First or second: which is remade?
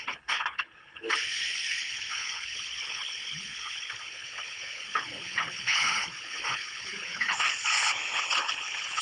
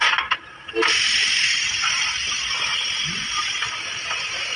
first